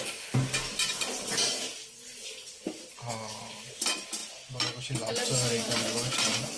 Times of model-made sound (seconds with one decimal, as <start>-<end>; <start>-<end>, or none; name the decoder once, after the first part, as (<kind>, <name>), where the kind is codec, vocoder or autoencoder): none